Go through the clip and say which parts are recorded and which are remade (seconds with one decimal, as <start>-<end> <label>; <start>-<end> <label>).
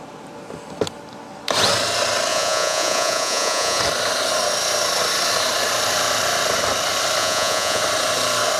0.0-2.3 recorded; 2.3-3.8 remade; 3.8-7.2 recorded; 7.2-7.8 remade; 7.8-8.6 recorded